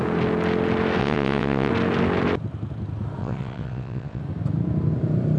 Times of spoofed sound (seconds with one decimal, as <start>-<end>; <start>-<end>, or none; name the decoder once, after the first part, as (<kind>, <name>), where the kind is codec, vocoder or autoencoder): 1.0-1.7 (vocoder, WaveNeXt); 3.2-4.2